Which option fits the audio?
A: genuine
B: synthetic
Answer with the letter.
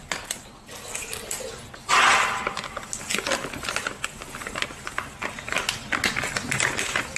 A